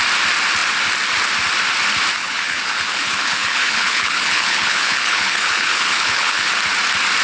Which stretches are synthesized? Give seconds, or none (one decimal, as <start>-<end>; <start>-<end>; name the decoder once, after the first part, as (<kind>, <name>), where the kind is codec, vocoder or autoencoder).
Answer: 2.2-6.5 (codec, HILCodec)